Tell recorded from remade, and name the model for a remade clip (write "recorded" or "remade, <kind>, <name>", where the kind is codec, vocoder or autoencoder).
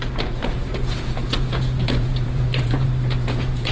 remade, vocoder, Vocos